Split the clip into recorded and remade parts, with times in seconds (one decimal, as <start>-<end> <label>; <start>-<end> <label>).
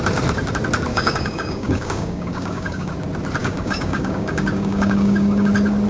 0.0-0.9 recorded; 0.9-2.9 remade; 2.9-3.4 recorded; 3.4-5.5 remade; 5.5-5.9 recorded